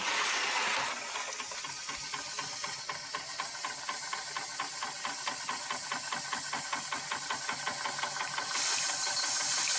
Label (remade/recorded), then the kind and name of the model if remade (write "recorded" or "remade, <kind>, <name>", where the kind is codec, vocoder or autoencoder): recorded